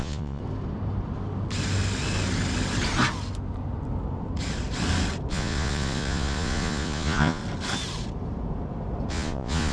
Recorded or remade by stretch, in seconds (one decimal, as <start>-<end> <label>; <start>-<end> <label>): 0.0-0.4 remade; 0.4-5.3 recorded; 5.3-7.4 remade; 7.4-9.1 recorded; 9.1-9.7 remade